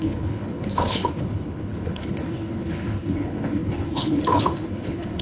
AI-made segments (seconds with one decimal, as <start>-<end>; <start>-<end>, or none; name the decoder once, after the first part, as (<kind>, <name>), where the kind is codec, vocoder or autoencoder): 0.0-5.2 (codec, HILCodec)

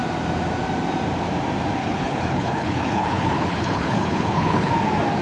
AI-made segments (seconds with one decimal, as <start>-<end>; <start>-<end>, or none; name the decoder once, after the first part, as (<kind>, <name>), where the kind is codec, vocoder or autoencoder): 1.8-4.7 (codec, HILCodec)

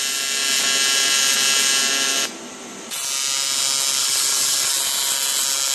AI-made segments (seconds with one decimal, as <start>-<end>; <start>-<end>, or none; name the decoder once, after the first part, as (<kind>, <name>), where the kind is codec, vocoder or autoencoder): 4.0-4.7 (codec, HILCodec)

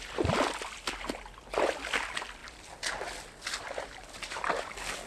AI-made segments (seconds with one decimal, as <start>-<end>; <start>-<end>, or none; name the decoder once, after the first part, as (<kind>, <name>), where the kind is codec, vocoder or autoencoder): none

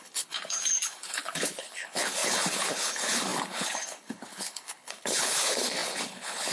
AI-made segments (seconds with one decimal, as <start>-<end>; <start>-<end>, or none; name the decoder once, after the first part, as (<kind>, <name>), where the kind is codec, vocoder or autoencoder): 0.0-6.5 (codec, HILCodec)

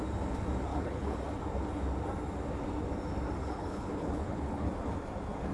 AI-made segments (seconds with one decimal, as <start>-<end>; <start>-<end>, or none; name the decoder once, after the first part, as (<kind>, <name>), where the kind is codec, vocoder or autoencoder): 0.7-1.2 (codec, HILCodec); 3.4-4.7

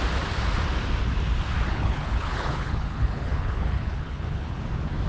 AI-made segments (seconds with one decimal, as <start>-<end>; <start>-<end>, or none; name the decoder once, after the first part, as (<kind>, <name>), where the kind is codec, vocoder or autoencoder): 1.7-4.6 (codec, HILCodec)